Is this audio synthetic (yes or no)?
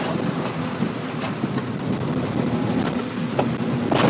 no